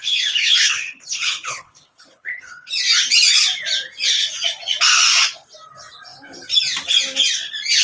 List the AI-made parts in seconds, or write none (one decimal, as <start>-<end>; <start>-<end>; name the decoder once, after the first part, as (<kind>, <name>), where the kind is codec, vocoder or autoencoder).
0.0-2.7 (codec, HILCodec)